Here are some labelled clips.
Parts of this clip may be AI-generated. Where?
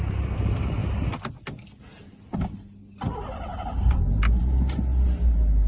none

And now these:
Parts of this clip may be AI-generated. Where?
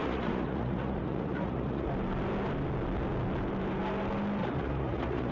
0.0-1.9 (vocoder, Vocos); 4.4-5.3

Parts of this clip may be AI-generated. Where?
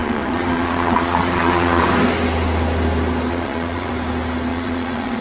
0.0-1.8 (vocoder, Vocos); 3.3-3.9; 4.5-5.2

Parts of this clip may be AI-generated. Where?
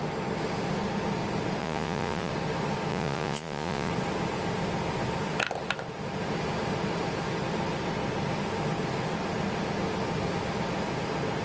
1.6-2.3 (vocoder, Vocos); 2.9-3.9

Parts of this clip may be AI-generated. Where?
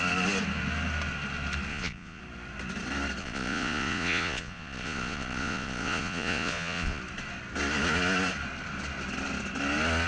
1.7-2.2 (vocoder, Vocos); 3.2-7.0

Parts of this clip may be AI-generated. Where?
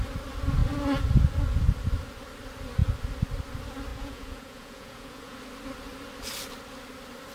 3.9-5.4 (vocoder, Vocos)